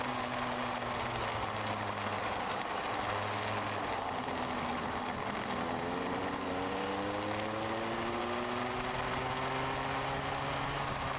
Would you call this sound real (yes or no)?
yes